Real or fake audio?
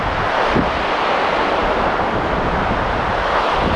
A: real